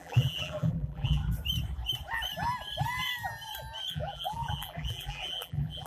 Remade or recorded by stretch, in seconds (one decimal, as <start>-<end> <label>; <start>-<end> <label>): 0.0-1.2 remade; 1.2-3.9 recorded; 3.9-5.9 remade